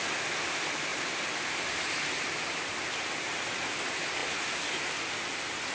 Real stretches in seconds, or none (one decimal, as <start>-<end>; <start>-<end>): 0.0-0.9; 1.7-5.7